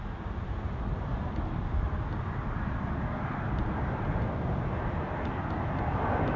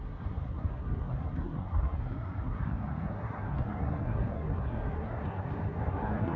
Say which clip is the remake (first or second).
second